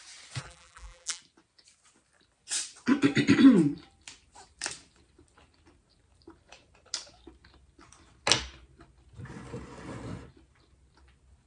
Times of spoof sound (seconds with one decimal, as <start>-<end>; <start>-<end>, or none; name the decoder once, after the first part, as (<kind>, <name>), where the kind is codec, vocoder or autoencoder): 0.4-1.2 (vocoder, BigVGAN v2)